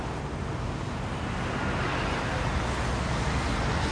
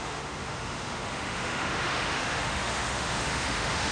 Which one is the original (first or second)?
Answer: first